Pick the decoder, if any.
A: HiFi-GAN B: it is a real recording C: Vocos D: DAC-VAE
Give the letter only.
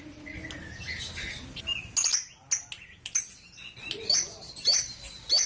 B